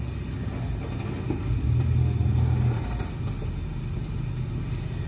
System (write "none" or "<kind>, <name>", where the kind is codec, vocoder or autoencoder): none